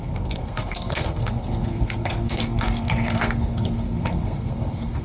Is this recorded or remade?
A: remade